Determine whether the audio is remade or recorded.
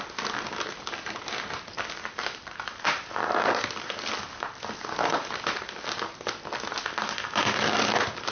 recorded